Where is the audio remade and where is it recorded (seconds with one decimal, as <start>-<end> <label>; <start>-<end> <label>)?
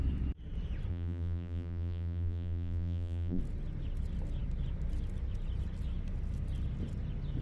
0.0-0.9 recorded; 0.9-3.4 remade; 3.4-7.4 recorded